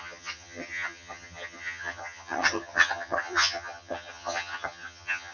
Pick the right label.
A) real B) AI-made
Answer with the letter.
B